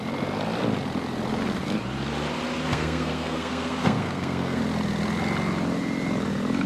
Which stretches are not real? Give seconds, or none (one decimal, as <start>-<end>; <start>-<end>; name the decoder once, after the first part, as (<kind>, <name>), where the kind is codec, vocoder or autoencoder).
2.7-4.6 (codec, SNAC)